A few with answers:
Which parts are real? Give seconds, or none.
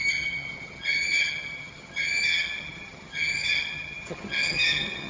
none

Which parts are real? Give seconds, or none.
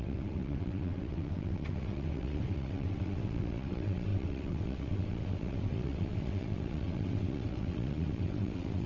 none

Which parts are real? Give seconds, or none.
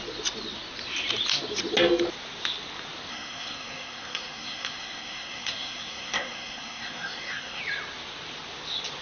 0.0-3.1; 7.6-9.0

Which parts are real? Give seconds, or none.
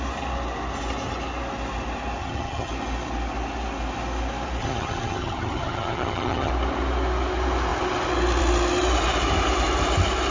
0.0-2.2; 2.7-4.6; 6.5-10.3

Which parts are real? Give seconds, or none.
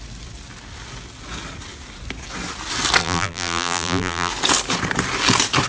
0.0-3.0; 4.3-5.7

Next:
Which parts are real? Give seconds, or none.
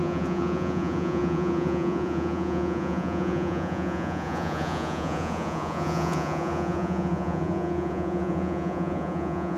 none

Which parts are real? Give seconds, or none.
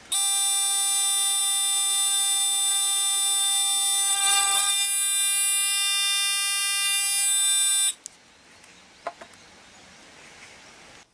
0.0-4.1; 4.7-11.1